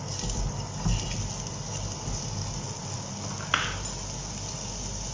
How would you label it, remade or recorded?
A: recorded